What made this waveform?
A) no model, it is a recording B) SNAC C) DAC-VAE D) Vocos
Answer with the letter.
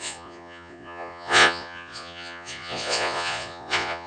D